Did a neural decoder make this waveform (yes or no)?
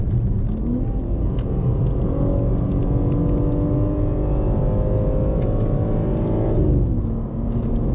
no